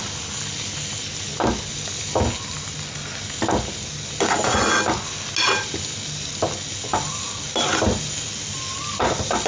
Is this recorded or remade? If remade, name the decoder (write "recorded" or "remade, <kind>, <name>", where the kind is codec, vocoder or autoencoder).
recorded